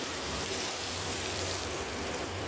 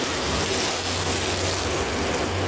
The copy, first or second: first